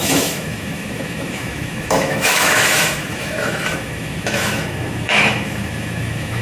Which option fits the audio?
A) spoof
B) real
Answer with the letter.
A